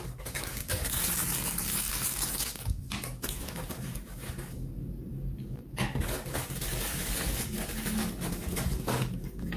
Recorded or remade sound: remade